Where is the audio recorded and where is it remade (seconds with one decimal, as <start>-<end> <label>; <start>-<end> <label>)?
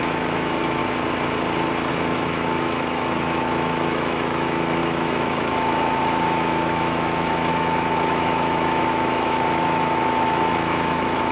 0.0-0.8 remade; 0.8-1.9 recorded; 1.9-11.3 remade